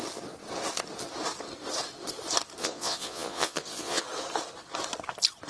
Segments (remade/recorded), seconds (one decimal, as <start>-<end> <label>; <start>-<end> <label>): 0.0-2.6 recorded; 2.6-4.0 remade; 4.0-5.5 recorded

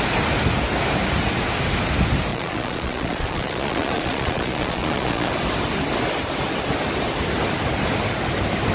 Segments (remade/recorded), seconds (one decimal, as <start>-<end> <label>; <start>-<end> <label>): 0.0-2.3 recorded; 2.3-5.3 remade; 5.3-8.7 recorded

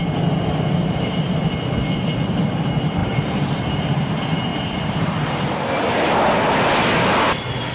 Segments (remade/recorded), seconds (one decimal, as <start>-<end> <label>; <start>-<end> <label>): 0.0-3.0 recorded; 3.0-3.6 remade; 3.6-4.5 recorded; 4.5-5.5 remade; 5.5-7.7 recorded

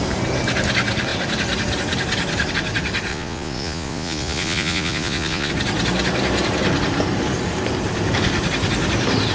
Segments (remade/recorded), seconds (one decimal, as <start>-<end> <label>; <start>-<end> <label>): 0.0-3.1 recorded; 3.1-5.5 remade; 5.5-9.3 recorded

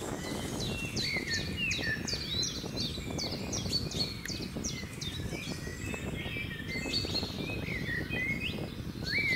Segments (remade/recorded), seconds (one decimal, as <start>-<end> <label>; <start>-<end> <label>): 0.0-9.4 recorded

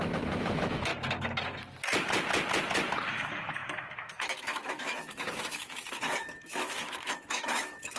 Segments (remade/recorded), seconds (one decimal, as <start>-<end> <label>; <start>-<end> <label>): 0.0-0.9 remade; 0.9-3.1 recorded; 3.1-8.0 remade